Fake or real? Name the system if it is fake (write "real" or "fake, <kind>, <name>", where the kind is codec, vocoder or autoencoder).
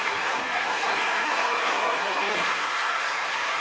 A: fake, codec, SNAC